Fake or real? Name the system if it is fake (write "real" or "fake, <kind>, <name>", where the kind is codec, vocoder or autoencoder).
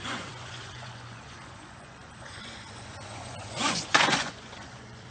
fake, vocoder, Vocos